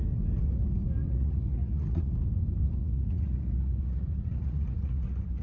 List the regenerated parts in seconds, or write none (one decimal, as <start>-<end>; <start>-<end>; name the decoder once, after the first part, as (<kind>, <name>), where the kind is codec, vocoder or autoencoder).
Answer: 1.0-2.1 (vocoder, Vocos); 2.8-5.4